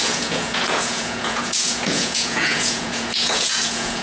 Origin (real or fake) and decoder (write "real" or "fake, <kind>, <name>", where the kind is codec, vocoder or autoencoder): fake, vocoder, Vocos